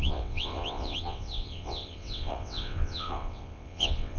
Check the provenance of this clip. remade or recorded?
remade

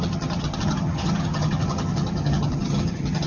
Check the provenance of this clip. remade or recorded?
remade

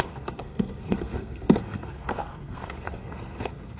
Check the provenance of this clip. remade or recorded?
remade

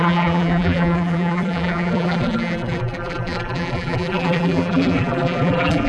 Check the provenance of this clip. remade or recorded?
remade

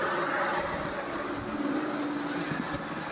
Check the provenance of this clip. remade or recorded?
recorded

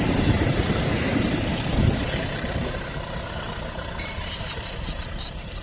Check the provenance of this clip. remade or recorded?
remade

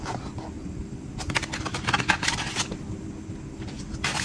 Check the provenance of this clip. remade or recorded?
recorded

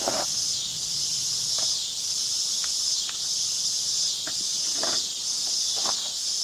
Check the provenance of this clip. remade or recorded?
recorded